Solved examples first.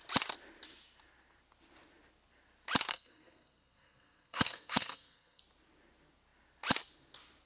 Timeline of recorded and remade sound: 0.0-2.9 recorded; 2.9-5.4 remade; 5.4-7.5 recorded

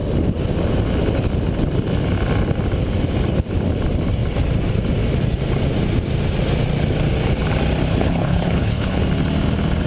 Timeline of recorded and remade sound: 0.0-7.9 recorded; 7.9-9.0 remade; 9.0-9.9 recorded

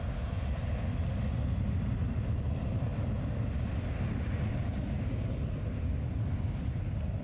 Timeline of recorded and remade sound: 0.0-7.2 recorded

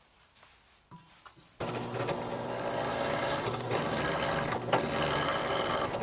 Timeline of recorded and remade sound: 0.0-2.9 recorded; 2.9-4.0 remade; 4.0-6.0 recorded

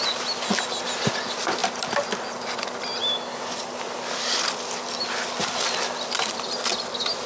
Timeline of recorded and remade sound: 0.0-7.3 recorded